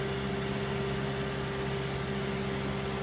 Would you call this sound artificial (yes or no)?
no